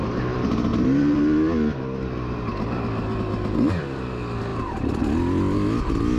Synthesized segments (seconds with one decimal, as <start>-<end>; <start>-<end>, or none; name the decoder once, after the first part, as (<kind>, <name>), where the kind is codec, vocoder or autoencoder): 0.7-1.2 (vocoder, BigVGAN v2); 4.5-5.0